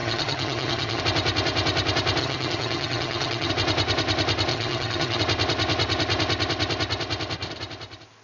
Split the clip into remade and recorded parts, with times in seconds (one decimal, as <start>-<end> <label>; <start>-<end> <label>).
0.0-1.0 remade; 1.0-2.2 recorded; 2.2-3.5 remade; 3.5-4.5 recorded; 4.5-5.2 remade; 5.2-8.2 recorded